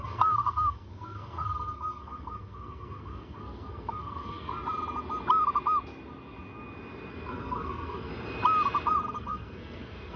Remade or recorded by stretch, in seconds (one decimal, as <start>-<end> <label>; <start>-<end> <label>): 0.0-4.5 remade; 4.5-7.1 recorded; 7.1-8.1 remade; 8.1-9.1 recorded; 9.1-10.2 remade